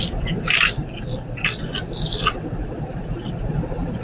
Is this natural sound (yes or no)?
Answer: no